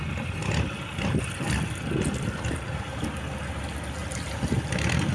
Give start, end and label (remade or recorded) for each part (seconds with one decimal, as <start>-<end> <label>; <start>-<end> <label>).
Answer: 0.0-4.0 recorded; 4.0-5.1 remade

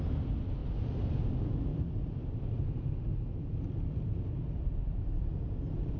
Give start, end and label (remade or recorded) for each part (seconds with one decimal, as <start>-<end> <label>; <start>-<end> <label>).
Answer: 0.0-0.6 recorded; 0.6-1.2 remade; 1.2-6.0 recorded

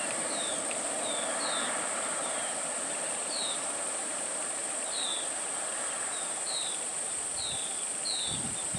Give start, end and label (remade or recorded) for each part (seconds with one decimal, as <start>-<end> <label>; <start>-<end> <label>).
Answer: 0.0-0.5 remade; 0.5-1.9 recorded; 1.9-5.1 remade; 5.1-6.4 recorded; 6.4-7.3 remade; 7.3-8.4 recorded; 8.4-8.8 remade